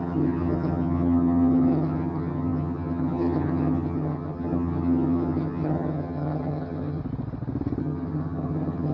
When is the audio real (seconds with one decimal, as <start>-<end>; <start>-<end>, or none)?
7.0-7.8